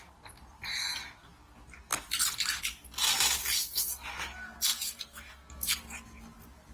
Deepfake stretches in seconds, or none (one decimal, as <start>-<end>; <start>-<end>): 4.7-5.5